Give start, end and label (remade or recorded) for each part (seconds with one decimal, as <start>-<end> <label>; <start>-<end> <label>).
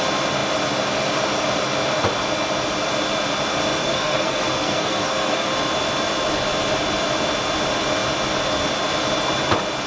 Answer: 0.0-3.8 recorded; 3.8-5.5 remade; 5.5-9.9 recorded